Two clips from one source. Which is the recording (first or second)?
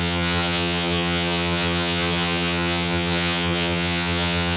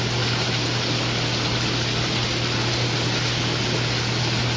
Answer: second